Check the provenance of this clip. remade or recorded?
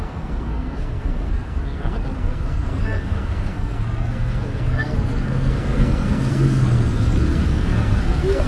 remade